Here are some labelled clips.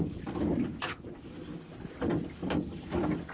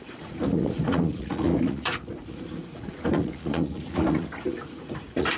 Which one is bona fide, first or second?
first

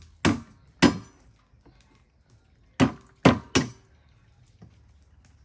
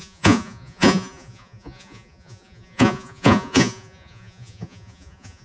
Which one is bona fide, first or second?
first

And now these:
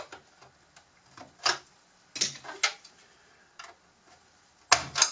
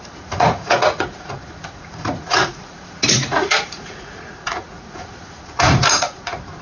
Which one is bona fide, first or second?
first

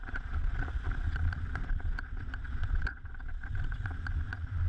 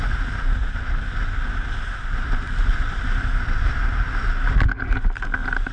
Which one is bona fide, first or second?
second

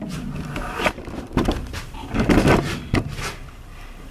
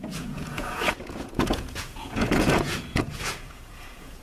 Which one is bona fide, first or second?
first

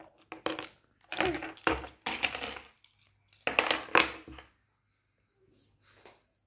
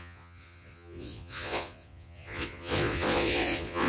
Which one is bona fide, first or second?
first